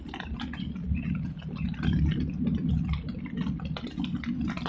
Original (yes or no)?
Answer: yes